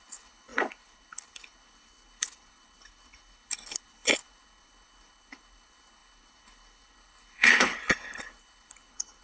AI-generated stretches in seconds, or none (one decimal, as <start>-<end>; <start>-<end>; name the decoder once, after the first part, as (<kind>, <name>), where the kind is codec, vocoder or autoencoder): 0.0-9.2 (codec, HILCodec)